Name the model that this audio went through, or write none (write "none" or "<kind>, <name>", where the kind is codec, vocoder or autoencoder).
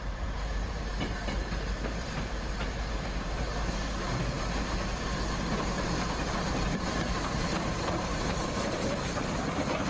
vocoder, BigVGAN v2